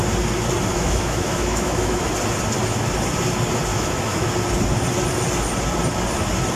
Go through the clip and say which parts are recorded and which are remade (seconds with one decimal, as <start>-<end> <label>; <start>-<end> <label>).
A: 0.0-0.7 recorded; 0.7-2.1 remade; 2.1-3.7 recorded; 3.7-4.3 remade; 4.3-6.6 recorded